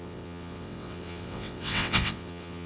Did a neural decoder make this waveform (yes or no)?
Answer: yes